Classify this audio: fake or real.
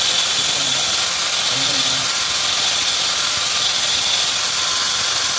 real